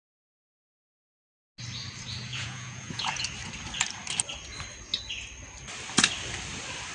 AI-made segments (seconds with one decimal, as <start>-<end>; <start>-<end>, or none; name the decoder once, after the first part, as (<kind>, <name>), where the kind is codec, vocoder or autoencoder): 2.3-3.2 (vocoder, Vocos)